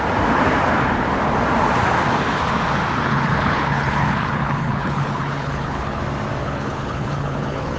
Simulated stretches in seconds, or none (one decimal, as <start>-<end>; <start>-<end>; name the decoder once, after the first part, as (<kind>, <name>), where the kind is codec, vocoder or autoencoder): 3.1-6.0 (codec, HILCodec); 6.4-7.8